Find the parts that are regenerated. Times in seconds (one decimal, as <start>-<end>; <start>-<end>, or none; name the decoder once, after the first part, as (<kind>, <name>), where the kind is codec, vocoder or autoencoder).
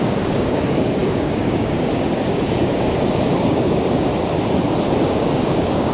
0.0-4.1 (codec, DAC); 5.0-5.9